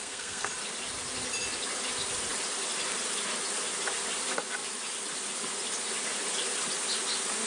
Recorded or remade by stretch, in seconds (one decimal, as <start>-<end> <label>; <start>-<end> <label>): 0.0-0.5 remade; 0.5-7.5 recorded